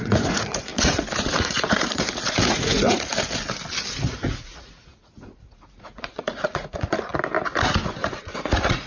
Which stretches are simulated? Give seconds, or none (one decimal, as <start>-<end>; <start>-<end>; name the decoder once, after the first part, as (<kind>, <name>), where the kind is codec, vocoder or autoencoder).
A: 0.0-3.1 (vocoder, Vocos); 3.9-7.1; 8.1-8.9